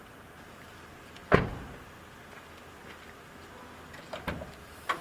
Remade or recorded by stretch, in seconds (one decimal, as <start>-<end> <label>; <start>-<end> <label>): 0.0-1.2 remade; 1.2-4.2 recorded; 4.2-5.0 remade